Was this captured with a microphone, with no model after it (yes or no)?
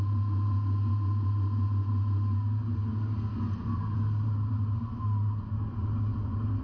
yes